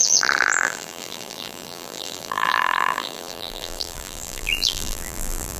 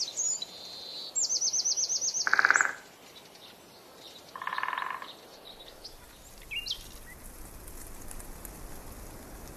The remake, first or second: first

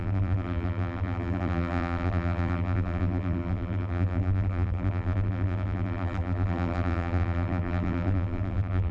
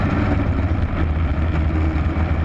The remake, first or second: first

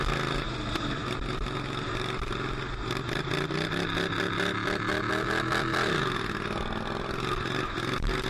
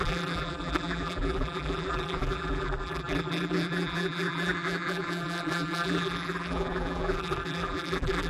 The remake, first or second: second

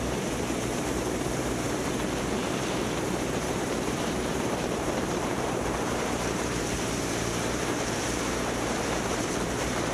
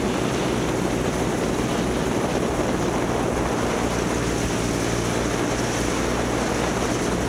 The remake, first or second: first